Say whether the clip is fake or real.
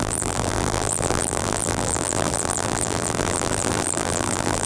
fake